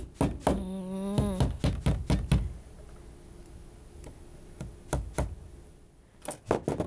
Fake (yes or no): no